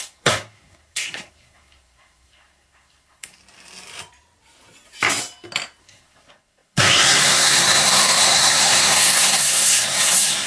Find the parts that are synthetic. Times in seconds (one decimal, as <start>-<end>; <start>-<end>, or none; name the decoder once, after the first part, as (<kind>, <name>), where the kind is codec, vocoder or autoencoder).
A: 0.0-3.4 (codec, SNAC); 5.8-10.5